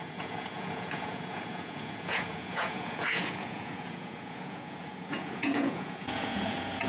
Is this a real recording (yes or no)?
no